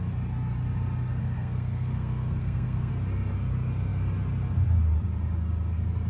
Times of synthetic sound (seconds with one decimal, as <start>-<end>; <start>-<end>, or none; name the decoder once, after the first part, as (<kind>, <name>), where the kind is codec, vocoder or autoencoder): 1.2-2.9 (codec, SNAC)